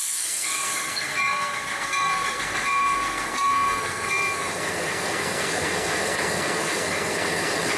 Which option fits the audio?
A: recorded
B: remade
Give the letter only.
B